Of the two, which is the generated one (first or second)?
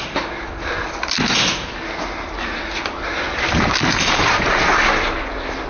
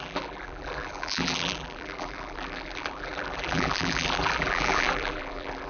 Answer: second